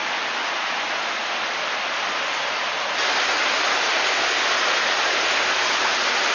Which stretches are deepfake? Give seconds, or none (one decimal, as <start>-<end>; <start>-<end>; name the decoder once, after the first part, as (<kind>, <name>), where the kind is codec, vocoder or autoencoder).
none